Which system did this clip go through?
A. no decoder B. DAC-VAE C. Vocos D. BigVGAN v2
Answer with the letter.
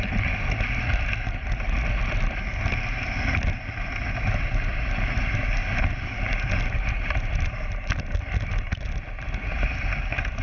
A